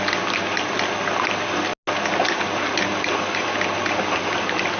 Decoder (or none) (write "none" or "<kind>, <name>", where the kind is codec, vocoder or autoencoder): none